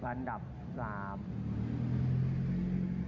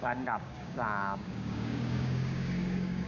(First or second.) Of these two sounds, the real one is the first